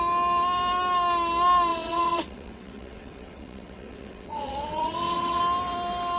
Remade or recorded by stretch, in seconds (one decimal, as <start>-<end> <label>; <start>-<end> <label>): 0.0-1.7 recorded; 1.7-5.4 remade; 5.4-6.2 recorded